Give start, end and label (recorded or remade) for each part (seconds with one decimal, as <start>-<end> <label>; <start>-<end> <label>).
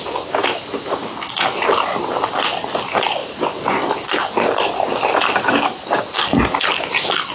0.0-7.3 recorded